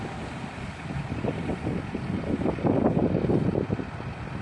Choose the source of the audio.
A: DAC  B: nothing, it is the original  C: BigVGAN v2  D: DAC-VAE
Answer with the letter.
B